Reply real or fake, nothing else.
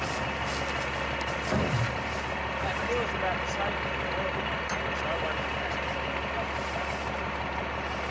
real